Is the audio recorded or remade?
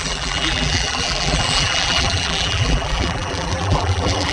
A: remade